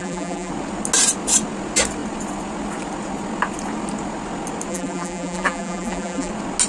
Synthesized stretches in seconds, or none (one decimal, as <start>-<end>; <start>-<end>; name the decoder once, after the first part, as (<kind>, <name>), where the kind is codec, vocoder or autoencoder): 0.0-0.5 (vocoder, BigVGAN v2); 4.7-6.3